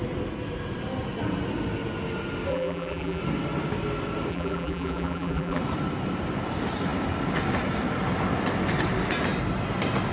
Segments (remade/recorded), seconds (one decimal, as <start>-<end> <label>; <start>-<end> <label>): 0.0-2.5 recorded; 2.5-3.2 remade; 3.2-4.3 recorded; 4.3-5.6 remade; 5.6-10.1 recorded